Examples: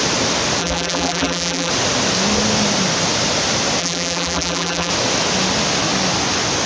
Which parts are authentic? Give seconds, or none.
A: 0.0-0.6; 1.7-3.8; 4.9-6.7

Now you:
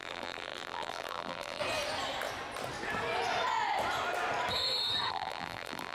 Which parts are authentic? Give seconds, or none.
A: 1.6-5.1

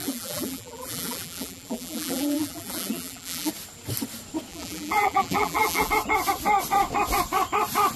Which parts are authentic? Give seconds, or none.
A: 3.5-4.5; 5.9-8.0